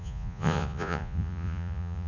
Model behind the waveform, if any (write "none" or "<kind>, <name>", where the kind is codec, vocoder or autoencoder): vocoder, Vocos